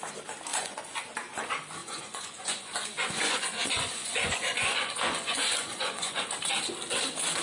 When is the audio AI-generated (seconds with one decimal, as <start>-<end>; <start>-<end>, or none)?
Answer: 0.5-1.0; 1.8-6.2